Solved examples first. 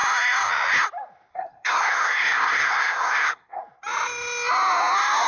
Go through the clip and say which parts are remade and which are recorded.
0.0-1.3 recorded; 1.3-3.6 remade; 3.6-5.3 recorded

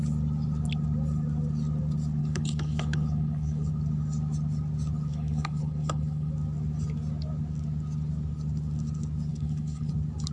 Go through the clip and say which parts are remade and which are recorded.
0.0-2.2 recorded; 2.2-3.7 remade; 3.7-5.1 recorded; 5.1-6.3 remade; 6.3-9.3 recorded; 9.3-9.9 remade; 9.9-10.3 recorded

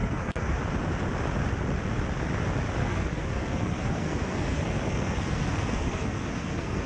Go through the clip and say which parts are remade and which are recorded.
0.0-0.6 remade; 0.6-2.8 recorded; 2.8-6.9 remade

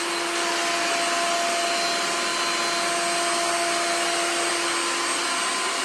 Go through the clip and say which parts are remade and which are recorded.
0.0-5.8 recorded

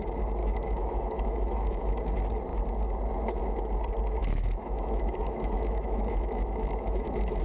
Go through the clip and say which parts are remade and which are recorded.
0.0-0.4 recorded; 0.4-2.0 remade; 2.0-4.2 recorded; 4.2-7.4 remade

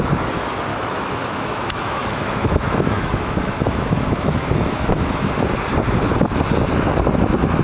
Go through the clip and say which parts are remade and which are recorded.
0.0-0.7 recorded; 0.7-5.3 remade; 5.3-7.6 recorded

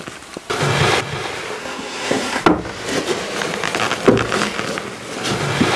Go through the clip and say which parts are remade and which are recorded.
0.0-1.6 recorded; 1.6-2.4 remade; 2.4-5.8 recorded